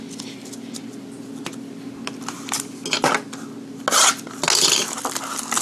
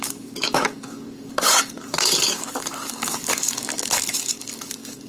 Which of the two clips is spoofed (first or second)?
second